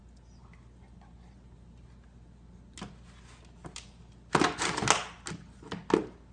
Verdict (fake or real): real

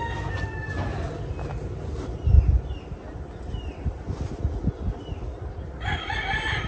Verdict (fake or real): real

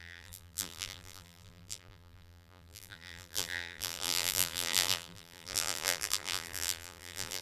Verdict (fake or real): fake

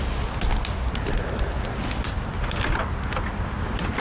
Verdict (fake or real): real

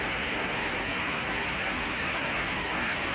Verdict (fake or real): fake